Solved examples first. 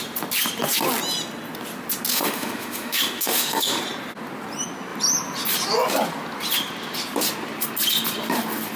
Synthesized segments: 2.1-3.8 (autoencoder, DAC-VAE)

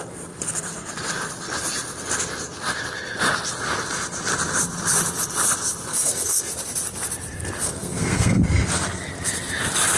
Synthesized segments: 5.9-6.5 (codec, SNAC); 7.6-8.4

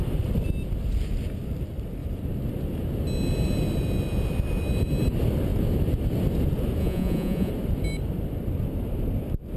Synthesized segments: 6.8-7.5 (vocoder, Vocos)

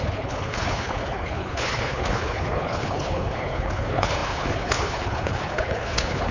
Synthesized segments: 0.0-6.3 (codec, HILCodec)

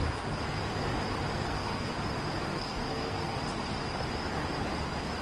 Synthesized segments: 1.3-1.9 (codec, SNAC); 2.5-3.4